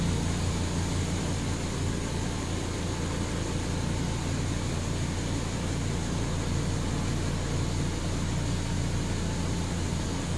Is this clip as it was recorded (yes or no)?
yes